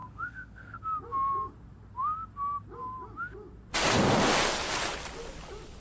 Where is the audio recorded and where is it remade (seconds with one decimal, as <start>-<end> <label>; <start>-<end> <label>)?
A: 0.0-0.8 remade; 0.8-5.8 recorded